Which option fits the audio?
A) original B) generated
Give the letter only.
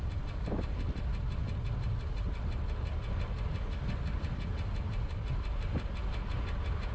A